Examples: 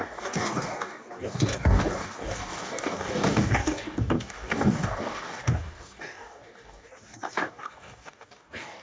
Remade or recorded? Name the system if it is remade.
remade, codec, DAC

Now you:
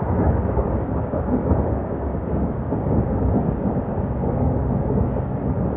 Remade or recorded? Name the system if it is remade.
remade, codec, DAC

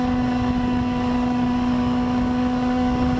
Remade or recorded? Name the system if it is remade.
remade, codec, DAC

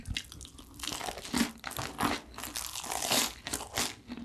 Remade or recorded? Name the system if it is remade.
recorded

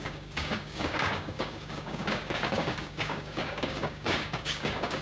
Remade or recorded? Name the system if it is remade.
remade, codec, DAC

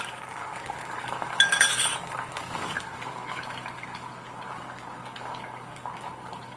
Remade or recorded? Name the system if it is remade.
remade, codec, DAC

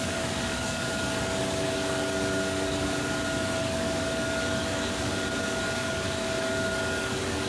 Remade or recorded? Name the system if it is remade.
remade, codec, DAC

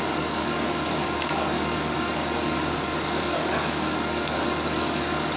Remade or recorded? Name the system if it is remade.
remade, codec, DAC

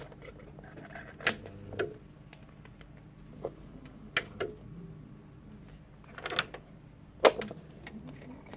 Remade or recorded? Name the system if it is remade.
recorded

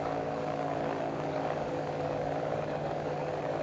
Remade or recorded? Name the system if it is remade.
remade, codec, DAC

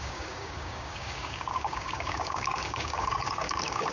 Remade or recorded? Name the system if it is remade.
remade, codec, DAC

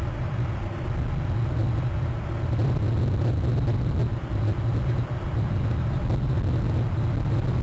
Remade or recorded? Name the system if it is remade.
recorded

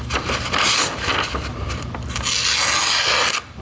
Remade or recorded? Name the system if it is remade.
recorded